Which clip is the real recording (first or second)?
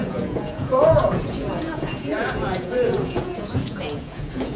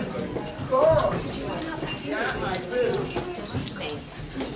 second